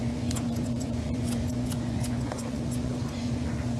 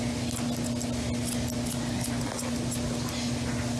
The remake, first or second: first